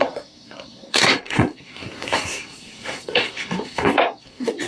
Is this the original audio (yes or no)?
no